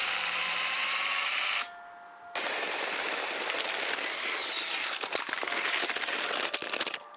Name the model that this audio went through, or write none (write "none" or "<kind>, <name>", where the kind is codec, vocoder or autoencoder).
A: none